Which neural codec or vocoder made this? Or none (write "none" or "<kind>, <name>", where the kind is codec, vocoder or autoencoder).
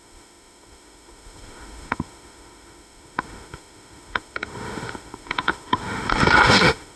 autoencoder, DAC-VAE